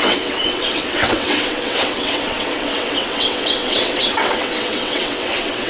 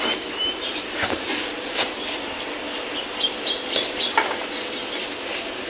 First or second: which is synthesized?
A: first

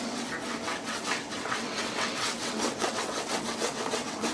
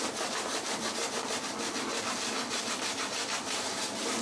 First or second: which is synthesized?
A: first